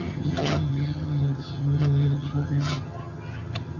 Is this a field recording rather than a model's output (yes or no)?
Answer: no